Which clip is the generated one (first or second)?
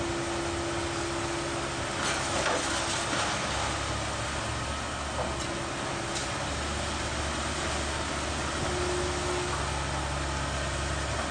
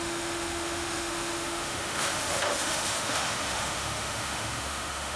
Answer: second